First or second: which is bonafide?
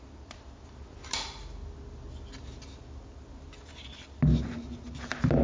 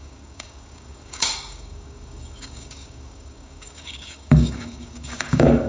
first